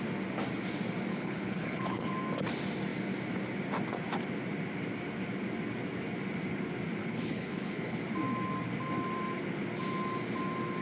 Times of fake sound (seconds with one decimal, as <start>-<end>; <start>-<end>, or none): 1.1-2.1; 7.0-8.0